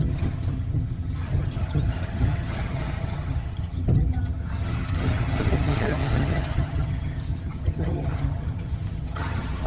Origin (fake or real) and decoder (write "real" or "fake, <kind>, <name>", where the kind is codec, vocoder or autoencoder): fake, vocoder, HiFi-GAN